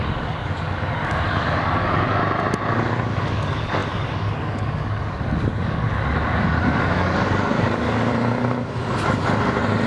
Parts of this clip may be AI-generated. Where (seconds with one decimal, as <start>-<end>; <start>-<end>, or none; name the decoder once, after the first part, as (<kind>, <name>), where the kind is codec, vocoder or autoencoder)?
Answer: 0.0-2.2 (codec, DAC); 2.7-8.1